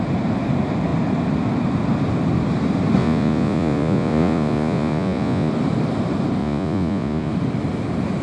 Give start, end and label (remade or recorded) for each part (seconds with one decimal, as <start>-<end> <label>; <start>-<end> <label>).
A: 0.0-3.0 recorded; 3.0-5.5 remade; 5.5-6.4 recorded; 6.4-7.3 remade; 7.3-8.2 recorded